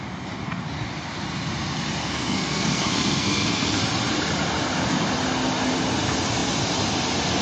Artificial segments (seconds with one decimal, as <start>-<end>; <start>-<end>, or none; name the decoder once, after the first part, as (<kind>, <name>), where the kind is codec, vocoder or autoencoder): 2.0-3.8 (codec, SNAC)